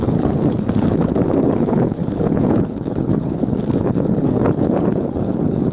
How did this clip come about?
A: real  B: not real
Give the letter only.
B